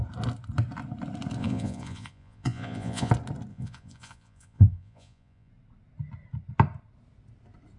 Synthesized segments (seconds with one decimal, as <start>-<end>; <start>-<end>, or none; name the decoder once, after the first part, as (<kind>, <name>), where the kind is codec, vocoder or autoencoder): 1.4-3.1 (vocoder, Vocos); 3.5-5.5